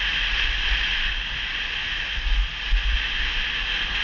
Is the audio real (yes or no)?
yes